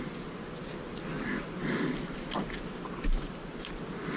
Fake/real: real